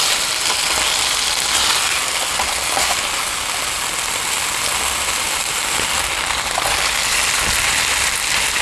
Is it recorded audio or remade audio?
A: recorded